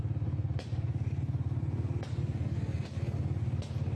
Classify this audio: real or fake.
real